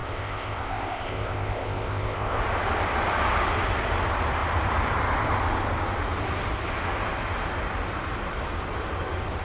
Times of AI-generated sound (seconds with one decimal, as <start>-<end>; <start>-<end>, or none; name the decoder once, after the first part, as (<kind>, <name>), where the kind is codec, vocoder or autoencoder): 0.0-2.4 (codec, ZipCodec)